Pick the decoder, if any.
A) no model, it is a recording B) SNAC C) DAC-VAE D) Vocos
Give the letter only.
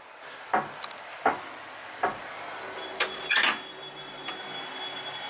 A